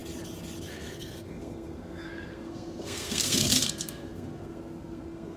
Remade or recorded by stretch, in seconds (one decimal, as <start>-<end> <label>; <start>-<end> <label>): 0.0-0.7 recorded; 0.7-5.4 remade